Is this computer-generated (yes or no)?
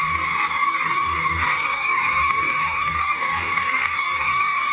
yes